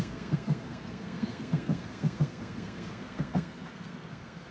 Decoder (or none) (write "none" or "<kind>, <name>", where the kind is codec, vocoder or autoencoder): codec, SNAC